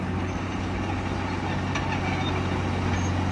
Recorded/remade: recorded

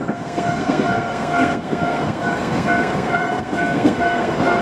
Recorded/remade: remade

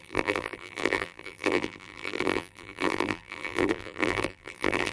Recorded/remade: remade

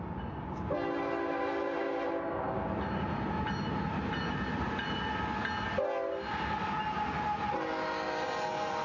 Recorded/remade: recorded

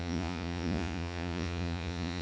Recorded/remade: remade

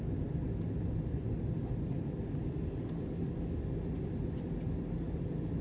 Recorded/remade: recorded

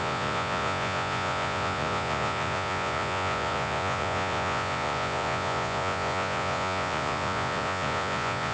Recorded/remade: remade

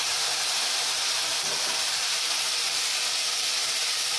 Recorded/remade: remade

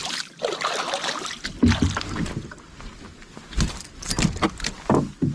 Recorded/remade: recorded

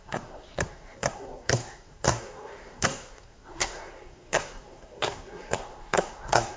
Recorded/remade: remade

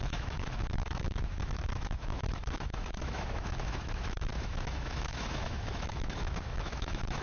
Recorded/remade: remade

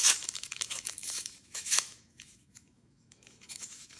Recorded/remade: remade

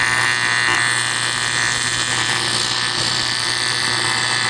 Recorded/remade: recorded